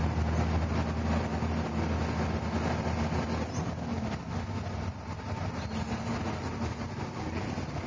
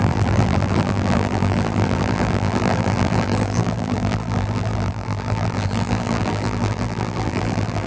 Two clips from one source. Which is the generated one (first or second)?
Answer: second